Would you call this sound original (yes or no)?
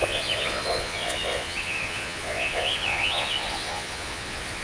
no